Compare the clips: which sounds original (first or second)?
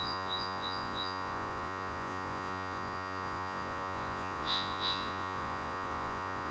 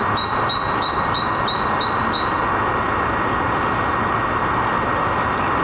second